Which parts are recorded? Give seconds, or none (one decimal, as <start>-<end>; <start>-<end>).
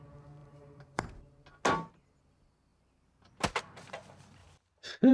0.0-0.4; 1.1-5.1